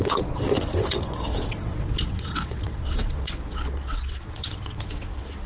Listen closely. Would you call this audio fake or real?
fake